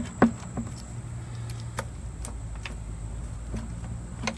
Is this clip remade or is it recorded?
recorded